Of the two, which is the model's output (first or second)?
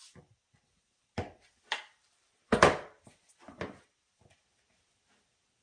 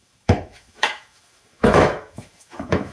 second